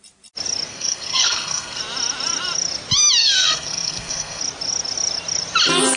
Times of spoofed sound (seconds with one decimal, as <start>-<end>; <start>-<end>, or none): 0.7-1.8; 3.2-4.4